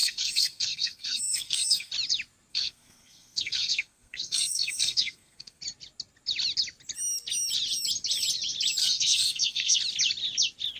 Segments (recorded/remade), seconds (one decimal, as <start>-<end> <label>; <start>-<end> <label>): 0.0-1.9 remade; 1.9-2.5 recorded; 2.5-5.6 remade; 5.6-8.8 recorded; 8.8-9.8 remade; 9.8-10.8 recorded